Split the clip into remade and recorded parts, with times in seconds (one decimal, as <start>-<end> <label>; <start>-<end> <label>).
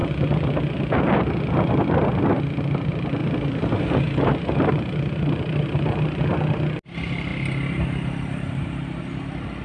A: 0.0-3.2 recorded; 3.2-6.2 remade; 6.2-9.6 recorded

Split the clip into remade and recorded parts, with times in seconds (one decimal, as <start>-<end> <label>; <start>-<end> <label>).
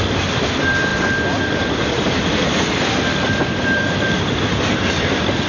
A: 0.0-0.9 recorded; 0.9-4.2 remade; 4.2-5.5 recorded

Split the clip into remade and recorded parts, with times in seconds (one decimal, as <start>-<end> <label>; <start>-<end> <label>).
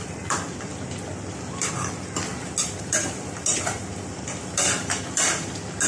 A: 0.0-0.7 remade; 0.7-2.8 recorded; 2.8-5.9 remade